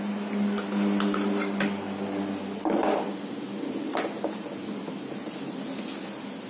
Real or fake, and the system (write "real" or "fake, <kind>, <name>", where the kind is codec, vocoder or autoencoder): real